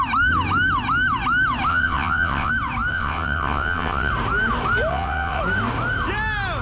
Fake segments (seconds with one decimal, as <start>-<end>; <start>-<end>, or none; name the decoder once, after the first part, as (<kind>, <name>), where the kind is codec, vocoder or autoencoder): 1.7-2.5 (vocoder, WaveNeXt); 2.9-4.1; 4.9-5.4